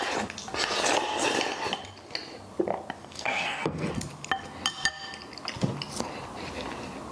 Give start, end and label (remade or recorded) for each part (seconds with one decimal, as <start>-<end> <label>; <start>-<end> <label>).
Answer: 0.0-3.0 recorded; 3.0-3.9 remade; 3.9-7.1 recorded